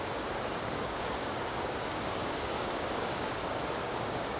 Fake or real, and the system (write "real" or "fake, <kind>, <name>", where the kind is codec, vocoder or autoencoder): fake, codec, DAC